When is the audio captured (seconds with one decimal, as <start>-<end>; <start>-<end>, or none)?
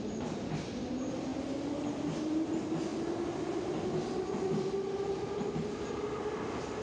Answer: 0.0-6.8